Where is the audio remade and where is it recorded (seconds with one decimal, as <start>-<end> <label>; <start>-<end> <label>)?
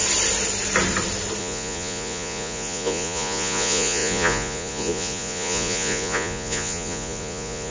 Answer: 0.0-1.4 recorded; 1.4-7.7 remade